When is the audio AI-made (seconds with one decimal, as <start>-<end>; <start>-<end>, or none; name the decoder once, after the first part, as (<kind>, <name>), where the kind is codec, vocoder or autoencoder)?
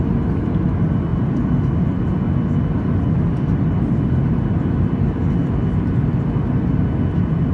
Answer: none